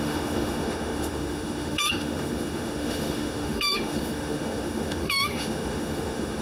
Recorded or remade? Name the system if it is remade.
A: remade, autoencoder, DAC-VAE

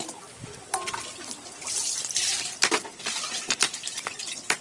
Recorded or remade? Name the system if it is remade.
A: recorded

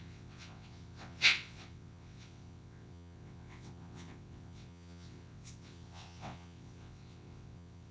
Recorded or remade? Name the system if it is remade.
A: remade, vocoder, WaveNeXt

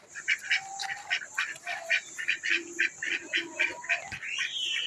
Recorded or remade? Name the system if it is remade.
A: recorded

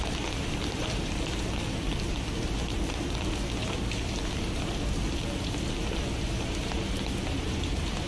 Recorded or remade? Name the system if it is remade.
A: recorded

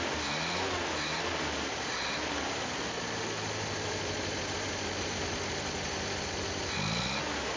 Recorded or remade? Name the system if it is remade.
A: recorded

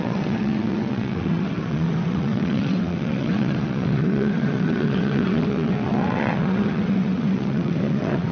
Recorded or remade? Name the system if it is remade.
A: remade, vocoder, WaveNeXt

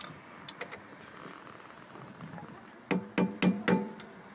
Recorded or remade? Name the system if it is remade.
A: recorded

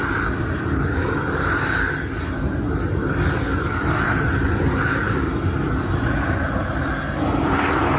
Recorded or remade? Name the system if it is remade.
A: recorded